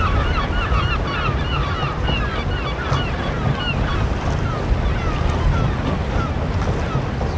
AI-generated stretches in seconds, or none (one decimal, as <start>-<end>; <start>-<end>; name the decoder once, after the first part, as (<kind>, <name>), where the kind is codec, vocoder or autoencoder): none

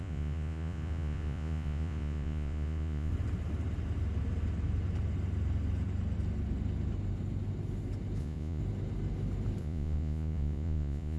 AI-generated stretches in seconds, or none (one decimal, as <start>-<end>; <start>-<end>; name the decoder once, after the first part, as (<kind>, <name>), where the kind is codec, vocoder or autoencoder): 0.0-3.1 (vocoder, Vocos); 8.2-8.6; 9.6-11.2

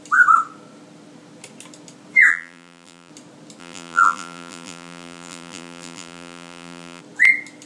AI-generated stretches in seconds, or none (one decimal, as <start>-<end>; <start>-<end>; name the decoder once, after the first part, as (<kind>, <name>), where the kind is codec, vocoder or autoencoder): 2.3-3.1 (vocoder, BigVGAN v2); 3.6-7.0

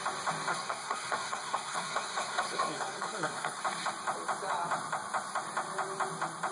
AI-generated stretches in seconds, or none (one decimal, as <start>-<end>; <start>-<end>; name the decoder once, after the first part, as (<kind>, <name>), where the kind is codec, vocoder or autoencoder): 0.5-3.6 (codec, SNAC)

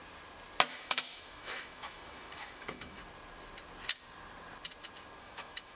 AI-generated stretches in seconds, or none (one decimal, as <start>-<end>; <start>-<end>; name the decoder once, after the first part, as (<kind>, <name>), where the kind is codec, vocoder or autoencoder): 0.7-3.0 (autoencoder, DAC-VAE); 5.2-5.8

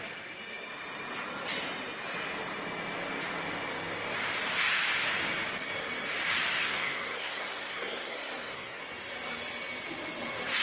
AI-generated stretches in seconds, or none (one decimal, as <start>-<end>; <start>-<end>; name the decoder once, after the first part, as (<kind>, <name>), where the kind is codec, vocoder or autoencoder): 6.6-8.8 (codec, SNAC)

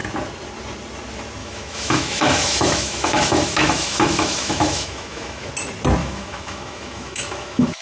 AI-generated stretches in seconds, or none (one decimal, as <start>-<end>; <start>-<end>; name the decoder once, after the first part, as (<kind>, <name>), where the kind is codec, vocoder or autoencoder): 1.4-5.5 (autoencoder, DAC-VAE); 6.0-7.8

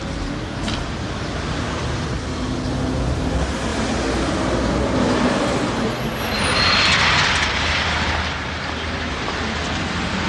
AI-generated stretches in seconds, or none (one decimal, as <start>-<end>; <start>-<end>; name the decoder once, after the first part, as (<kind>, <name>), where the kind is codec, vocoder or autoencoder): none